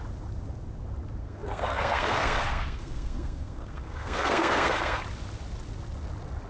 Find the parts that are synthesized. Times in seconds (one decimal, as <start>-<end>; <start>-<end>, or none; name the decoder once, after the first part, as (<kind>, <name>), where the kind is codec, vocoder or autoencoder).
1.2-5.0 (codec, SNAC)